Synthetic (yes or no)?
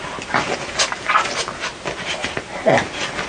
no